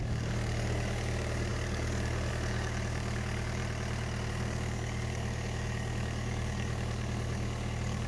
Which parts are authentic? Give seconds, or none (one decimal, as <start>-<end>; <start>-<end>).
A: 3.6-4.3